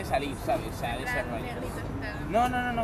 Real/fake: real